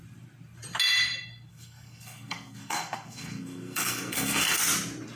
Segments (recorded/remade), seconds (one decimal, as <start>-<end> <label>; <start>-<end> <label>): 0.0-1.5 recorded; 1.5-4.6 remade; 4.6-5.2 recorded